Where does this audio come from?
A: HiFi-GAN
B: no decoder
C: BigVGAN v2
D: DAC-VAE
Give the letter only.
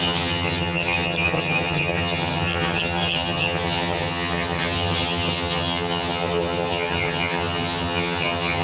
A